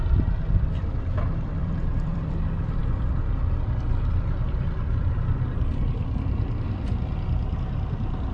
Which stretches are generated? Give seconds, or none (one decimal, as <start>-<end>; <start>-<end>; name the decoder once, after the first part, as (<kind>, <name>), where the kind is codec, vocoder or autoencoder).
0.0-8.3 (vocoder, BigVGAN v2)